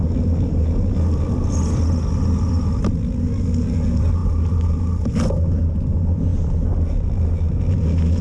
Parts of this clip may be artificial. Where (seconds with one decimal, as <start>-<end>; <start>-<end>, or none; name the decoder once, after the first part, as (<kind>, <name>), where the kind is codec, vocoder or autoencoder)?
none